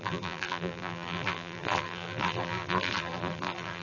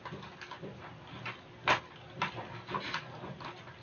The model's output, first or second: first